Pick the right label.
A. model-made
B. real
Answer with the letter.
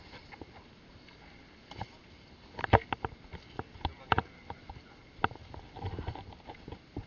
B